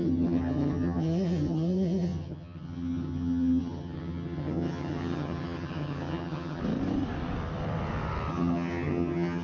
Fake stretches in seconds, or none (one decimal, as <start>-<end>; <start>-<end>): 0.0-6.6; 8.3-9.4

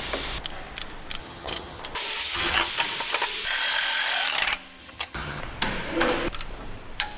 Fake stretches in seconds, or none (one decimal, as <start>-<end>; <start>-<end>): 1.2-1.8; 2.2-2.7; 4.8-5.4

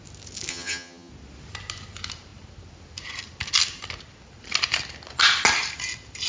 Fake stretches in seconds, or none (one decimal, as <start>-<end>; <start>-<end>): 0.5-1.1

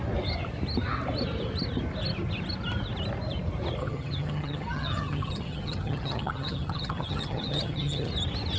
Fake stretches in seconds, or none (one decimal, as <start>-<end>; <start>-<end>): 3.8-8.1

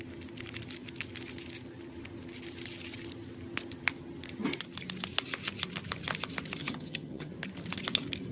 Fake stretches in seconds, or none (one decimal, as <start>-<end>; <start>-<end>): 6.6-7.3